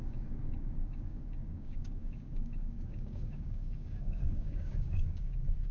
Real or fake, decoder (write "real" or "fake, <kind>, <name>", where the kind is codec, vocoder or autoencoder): fake, codec, DAC